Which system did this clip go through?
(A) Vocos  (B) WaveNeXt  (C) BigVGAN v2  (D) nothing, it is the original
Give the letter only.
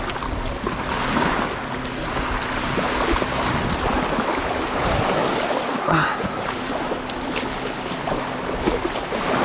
D